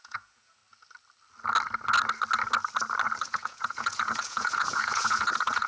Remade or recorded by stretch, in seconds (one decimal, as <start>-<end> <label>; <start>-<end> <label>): 0.0-0.6 remade; 0.6-3.2 recorded; 3.2-5.7 remade

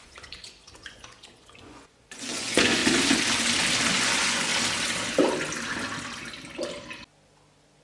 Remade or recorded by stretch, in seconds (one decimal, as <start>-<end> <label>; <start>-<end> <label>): 0.0-2.8 remade; 2.8-3.9 recorded; 3.9-4.5 remade; 4.5-7.8 recorded

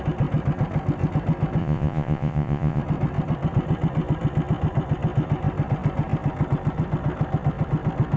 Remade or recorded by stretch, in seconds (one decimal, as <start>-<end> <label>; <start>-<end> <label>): 0.0-1.6 recorded; 1.6-2.8 remade; 2.8-8.2 recorded

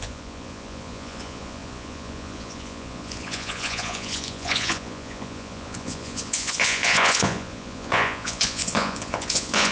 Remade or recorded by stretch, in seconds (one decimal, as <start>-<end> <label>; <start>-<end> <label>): 0.0-9.7 remade